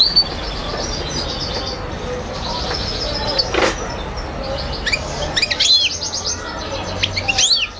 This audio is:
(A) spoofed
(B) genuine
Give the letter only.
B